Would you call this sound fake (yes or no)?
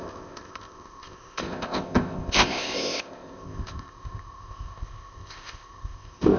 yes